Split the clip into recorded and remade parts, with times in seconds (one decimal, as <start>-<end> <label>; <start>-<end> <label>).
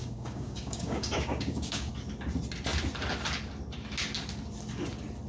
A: 0.0-1.9 remade; 1.9-5.3 recorded